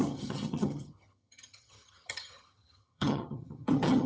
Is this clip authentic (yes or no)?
no